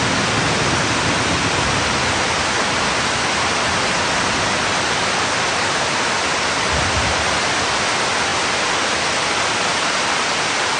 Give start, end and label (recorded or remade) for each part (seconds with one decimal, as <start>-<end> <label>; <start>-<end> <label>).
0.0-10.8 recorded